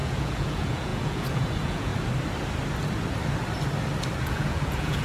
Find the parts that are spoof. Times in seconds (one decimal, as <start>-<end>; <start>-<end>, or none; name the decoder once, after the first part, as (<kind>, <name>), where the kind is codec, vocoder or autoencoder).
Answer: 0.0-1.9 (vocoder, Vocos); 4.2-5.0